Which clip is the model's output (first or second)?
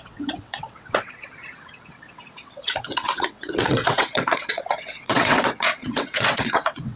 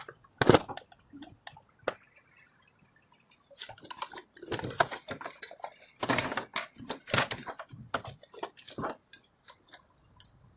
first